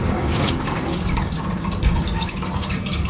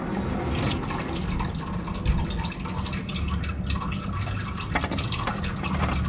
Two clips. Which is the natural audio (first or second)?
second